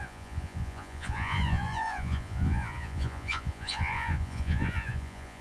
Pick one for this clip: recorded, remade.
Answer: remade